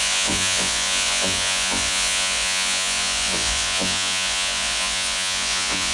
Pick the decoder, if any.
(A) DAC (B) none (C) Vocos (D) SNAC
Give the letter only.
C